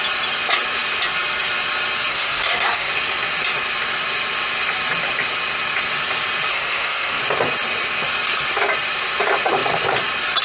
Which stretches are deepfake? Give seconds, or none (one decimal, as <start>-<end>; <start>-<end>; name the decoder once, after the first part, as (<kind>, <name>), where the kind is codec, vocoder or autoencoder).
2.1-2.9 (codec, SNAC); 6.5-7.2